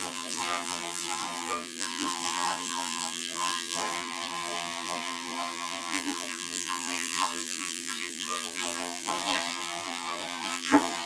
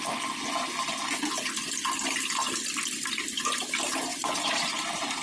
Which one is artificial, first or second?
first